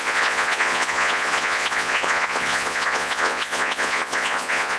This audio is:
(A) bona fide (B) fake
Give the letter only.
B